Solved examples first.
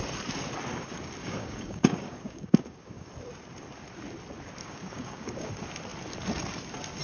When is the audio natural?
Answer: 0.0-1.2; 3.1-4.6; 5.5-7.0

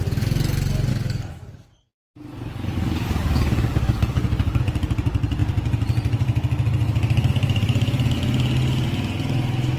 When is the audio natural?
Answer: 0.0-0.9; 4.6-9.8

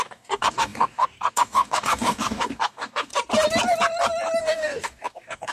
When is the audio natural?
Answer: 3.1-4.4

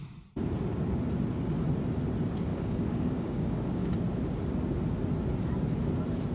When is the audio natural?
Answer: 0.0-2.5; 3.9-6.3

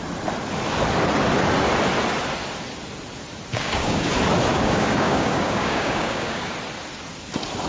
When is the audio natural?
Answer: 0.0-3.5; 4.1-4.5; 6.5-7.7

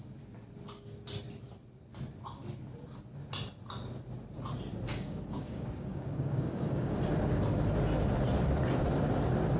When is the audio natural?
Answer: 0.0-4.9; 7.0-9.6